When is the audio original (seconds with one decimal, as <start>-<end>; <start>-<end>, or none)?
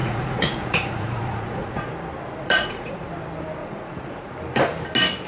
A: 1.9-2.4; 3.1-3.6; 4.3-5.3